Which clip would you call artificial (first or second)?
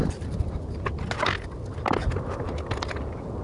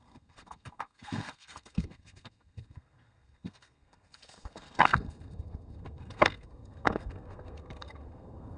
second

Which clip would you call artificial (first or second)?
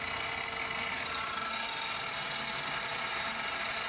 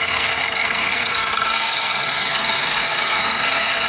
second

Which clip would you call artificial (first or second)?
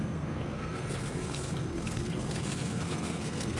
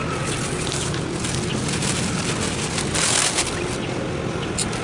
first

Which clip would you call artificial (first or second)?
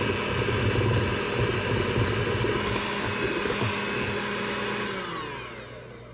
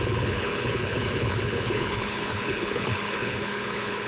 second